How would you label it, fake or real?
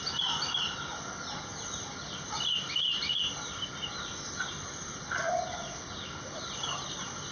real